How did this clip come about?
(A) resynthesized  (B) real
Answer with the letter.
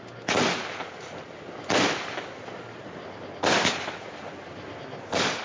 B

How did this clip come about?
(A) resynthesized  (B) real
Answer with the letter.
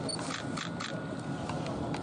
B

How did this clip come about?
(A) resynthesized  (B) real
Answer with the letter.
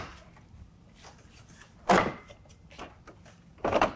A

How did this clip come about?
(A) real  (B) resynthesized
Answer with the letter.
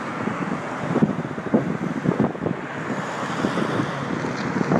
A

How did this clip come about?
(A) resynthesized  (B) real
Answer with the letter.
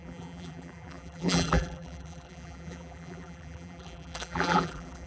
A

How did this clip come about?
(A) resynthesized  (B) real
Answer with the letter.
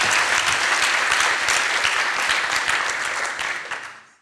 B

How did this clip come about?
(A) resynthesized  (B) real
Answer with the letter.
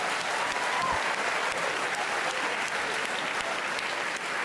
B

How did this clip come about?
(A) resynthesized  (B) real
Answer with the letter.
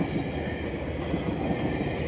B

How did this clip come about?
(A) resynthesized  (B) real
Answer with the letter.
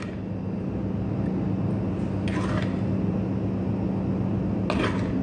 B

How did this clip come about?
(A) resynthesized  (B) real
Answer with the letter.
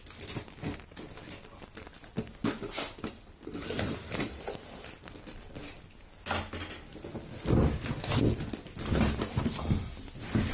B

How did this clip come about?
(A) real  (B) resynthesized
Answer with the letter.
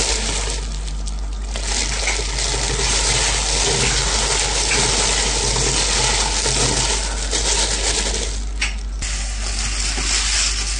A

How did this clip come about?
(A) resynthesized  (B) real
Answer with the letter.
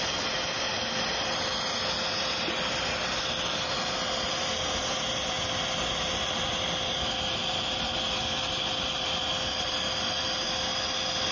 B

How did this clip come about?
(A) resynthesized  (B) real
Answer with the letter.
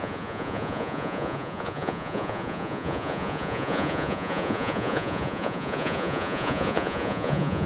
A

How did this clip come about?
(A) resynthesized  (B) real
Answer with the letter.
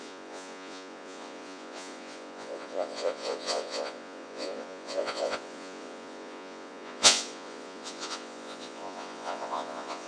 A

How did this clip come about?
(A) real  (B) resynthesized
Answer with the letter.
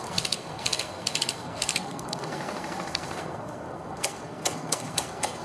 B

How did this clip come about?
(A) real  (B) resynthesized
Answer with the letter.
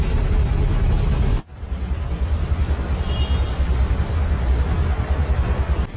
A